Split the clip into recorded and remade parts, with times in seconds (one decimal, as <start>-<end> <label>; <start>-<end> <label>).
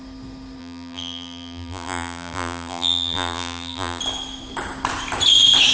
0.0-0.6 recorded; 0.6-4.0 remade; 4.0-5.7 recorded